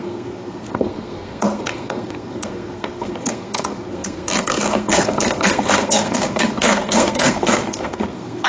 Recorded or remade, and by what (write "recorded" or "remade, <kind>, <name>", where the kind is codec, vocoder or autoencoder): remade, codec, SNAC